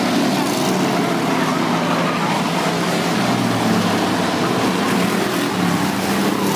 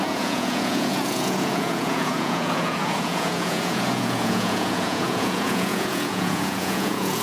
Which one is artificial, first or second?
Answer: second